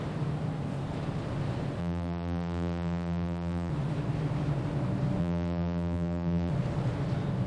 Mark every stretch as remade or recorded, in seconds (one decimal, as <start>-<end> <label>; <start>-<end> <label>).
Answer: 0.0-1.8 recorded; 1.8-3.7 remade; 3.7-5.2 recorded; 5.2-6.5 remade; 6.5-7.5 recorded